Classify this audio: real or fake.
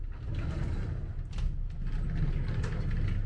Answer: real